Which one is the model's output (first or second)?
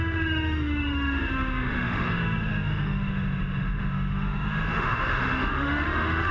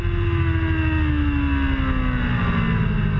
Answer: first